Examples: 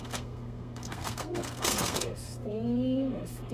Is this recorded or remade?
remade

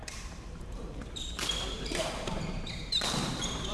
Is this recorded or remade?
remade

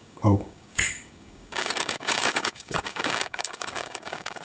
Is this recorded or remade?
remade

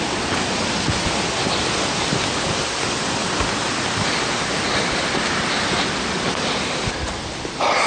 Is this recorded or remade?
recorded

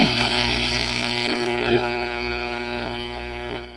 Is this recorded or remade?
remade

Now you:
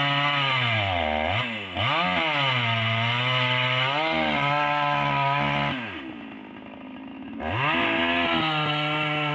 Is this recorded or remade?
recorded